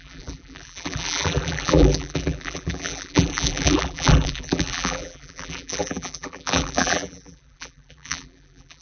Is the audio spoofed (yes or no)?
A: yes